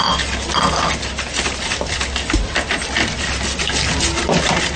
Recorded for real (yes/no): yes